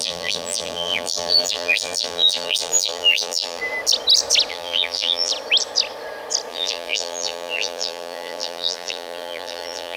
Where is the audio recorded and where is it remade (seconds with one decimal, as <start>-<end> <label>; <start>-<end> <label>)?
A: 0.0-3.6 remade; 3.6-4.5 recorded; 4.5-5.3 remade; 5.3-6.5 recorded; 6.5-10.0 remade